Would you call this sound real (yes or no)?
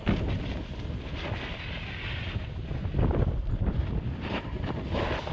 yes